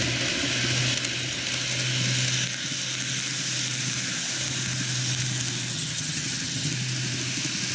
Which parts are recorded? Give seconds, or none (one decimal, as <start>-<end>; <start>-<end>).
0.0-5.7; 6.7-7.7

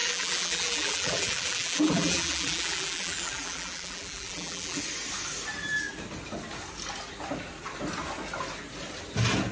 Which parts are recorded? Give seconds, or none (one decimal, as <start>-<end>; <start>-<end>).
4.8-9.5

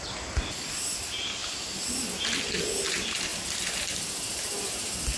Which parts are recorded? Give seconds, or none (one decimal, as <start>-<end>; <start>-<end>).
0.0-5.2

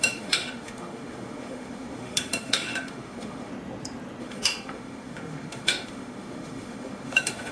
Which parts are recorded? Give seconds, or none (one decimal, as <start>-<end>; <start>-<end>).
3.5-4.2